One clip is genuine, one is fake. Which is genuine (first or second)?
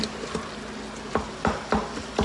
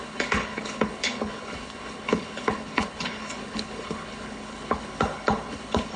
first